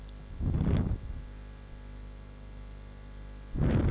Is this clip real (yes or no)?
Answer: yes